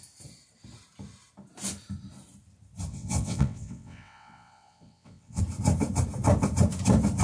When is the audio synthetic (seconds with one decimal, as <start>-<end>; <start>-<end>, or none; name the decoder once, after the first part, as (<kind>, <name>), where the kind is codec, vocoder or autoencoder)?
2.9-5.4 (vocoder, WaveNeXt)